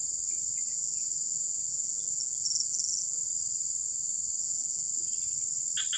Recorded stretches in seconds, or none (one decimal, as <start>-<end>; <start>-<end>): 0.0-0.7; 3.2-4.4; 4.9-6.0